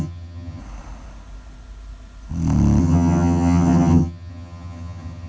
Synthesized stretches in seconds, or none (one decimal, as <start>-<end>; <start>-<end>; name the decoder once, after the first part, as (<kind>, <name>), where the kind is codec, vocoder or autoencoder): 0.0-0.6 (vocoder, HiFi-GAN); 2.8-5.3